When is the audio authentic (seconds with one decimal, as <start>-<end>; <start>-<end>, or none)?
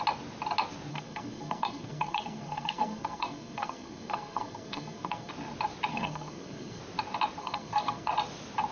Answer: 0.0-0.9; 5.3-5.9; 6.8-7.4; 8.1-8.7